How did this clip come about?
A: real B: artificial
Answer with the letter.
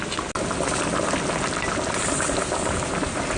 A